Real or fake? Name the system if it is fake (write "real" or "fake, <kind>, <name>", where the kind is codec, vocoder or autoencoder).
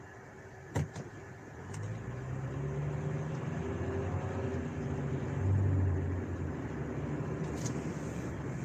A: real